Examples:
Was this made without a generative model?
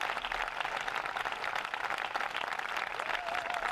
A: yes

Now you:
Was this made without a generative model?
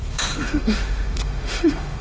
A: no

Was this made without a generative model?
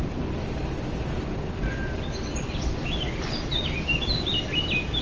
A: yes